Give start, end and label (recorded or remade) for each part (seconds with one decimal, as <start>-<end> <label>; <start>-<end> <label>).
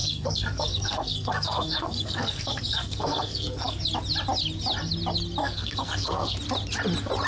0.0-3.8 remade; 3.8-5.4 recorded; 5.4-6.4 remade; 6.4-7.3 recorded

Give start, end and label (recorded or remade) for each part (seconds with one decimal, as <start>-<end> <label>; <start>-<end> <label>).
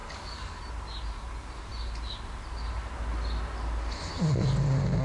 0.0-0.6 remade; 0.6-5.0 recorded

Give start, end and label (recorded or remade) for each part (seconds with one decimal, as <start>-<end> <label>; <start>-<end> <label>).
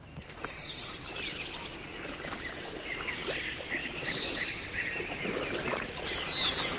0.0-1.7 recorded; 1.7-3.0 remade; 3.0-3.8 recorded; 3.8-5.2 remade; 5.2-6.8 recorded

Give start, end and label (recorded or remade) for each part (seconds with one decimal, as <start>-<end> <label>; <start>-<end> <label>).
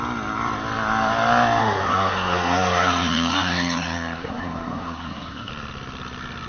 0.0-1.6 recorded; 1.6-5.5 remade; 5.5-6.5 recorded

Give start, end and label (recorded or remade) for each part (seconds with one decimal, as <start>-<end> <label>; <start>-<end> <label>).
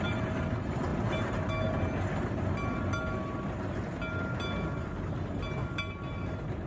0.0-6.7 recorded